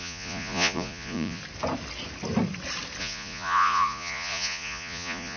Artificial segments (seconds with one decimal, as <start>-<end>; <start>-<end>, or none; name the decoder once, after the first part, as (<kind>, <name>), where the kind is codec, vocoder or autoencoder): 0.0-1.4 (vocoder, Vocos); 3.0-5.4